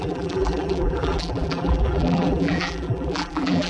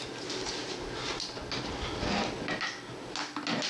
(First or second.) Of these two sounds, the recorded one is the second